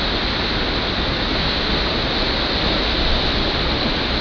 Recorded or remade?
recorded